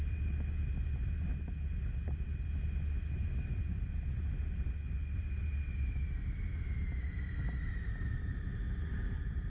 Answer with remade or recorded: recorded